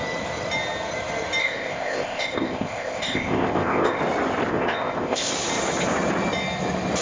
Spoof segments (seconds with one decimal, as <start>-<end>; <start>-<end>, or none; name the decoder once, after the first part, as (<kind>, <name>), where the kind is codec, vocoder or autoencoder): 1.4-4.0 (codec, ZipCodec); 4.5-5.3